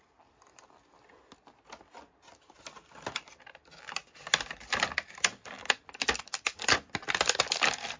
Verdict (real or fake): real